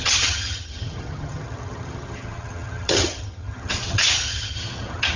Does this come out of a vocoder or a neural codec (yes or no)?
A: yes